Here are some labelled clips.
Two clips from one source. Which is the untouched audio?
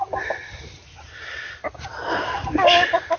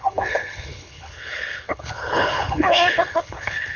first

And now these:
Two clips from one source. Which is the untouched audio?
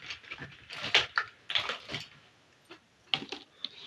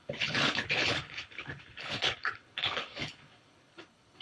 first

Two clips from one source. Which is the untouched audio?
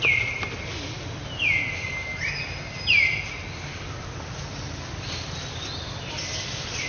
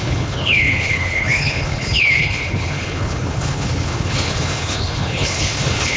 first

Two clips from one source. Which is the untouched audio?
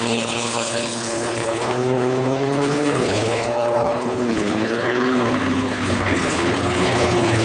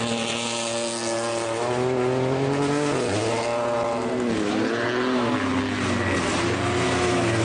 second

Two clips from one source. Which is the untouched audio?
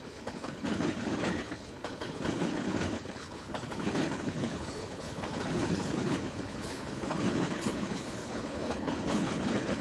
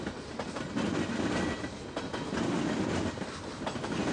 second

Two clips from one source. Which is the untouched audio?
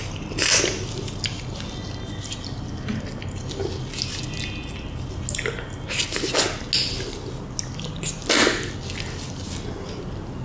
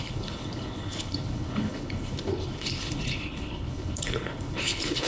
first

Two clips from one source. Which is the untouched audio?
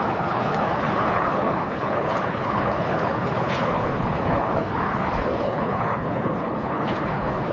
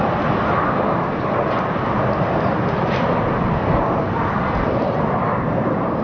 second